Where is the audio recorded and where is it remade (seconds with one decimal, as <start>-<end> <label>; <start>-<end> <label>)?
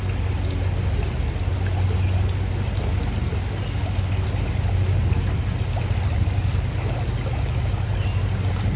0.0-8.8 recorded